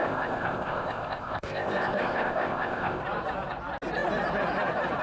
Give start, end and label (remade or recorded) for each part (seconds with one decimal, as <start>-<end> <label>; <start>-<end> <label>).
0.0-3.0 remade; 3.0-5.0 recorded